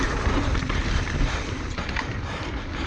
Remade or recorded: remade